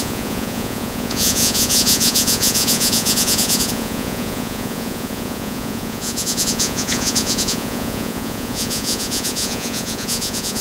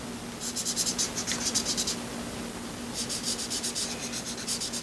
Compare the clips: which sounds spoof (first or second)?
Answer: first